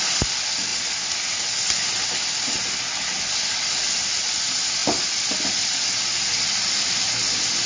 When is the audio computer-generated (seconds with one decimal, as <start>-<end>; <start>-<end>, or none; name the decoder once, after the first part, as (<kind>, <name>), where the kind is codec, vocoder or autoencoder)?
none